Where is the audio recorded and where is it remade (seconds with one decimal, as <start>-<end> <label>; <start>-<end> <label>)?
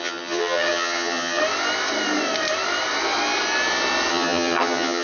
0.0-1.4 remade; 1.4-4.1 recorded; 4.1-5.0 remade